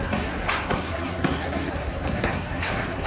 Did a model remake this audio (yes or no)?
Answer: yes